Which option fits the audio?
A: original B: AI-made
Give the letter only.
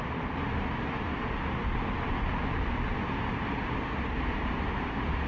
A